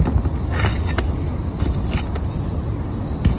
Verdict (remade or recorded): recorded